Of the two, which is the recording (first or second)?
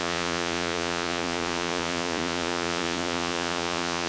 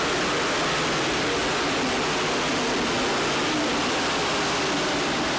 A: second